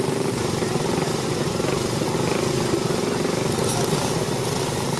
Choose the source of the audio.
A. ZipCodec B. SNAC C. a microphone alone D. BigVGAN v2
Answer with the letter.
C